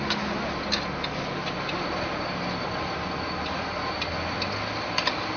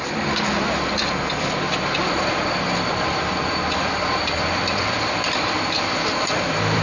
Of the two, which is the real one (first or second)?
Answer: first